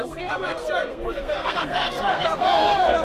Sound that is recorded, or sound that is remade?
remade